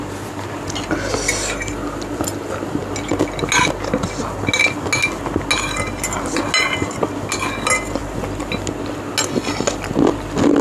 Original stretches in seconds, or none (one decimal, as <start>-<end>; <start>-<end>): 0.0-10.6